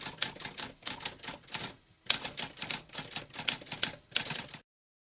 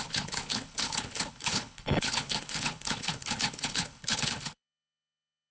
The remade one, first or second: second